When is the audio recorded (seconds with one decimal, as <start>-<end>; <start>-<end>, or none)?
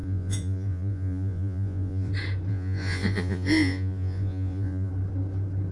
2.1-2.5; 4.9-5.7